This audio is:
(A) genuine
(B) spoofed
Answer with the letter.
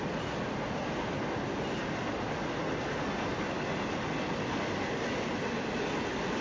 A